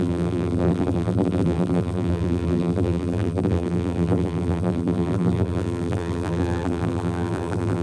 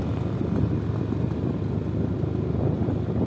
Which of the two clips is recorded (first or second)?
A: second